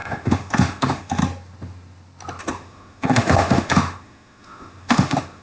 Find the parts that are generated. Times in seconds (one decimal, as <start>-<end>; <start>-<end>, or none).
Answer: 0.0-1.2; 2.4-5.4